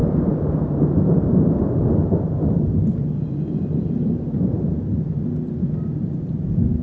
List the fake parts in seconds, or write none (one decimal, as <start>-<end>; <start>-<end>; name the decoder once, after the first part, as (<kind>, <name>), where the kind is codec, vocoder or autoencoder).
0.0-6.8 (vocoder, BigVGAN v2)